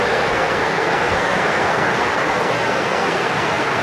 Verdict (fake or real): fake